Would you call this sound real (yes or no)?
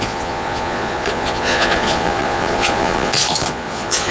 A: no